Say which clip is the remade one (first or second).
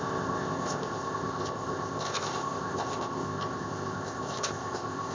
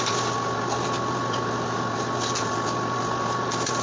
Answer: first